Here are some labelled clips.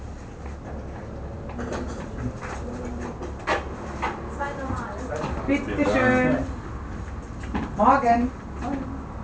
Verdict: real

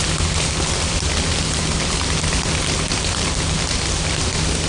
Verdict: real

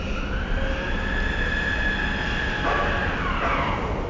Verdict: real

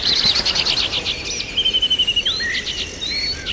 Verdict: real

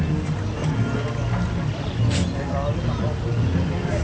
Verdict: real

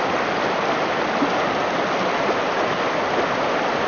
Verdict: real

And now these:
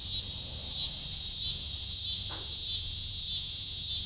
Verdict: real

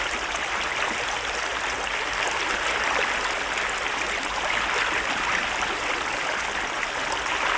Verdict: real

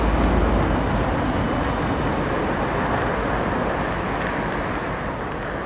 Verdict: real